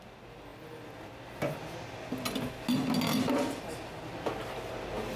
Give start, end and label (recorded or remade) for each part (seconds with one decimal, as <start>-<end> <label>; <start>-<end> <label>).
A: 0.0-5.2 recorded